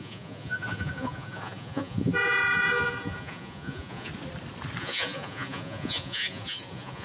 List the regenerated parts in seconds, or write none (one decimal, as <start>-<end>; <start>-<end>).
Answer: 0.0-4.1; 4.8-7.0